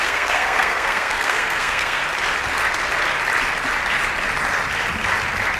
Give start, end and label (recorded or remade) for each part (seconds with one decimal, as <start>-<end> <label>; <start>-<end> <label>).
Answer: 0.0-2.0 remade; 2.0-5.6 recorded